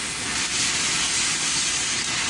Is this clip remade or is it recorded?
recorded